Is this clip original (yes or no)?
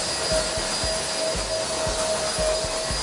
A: yes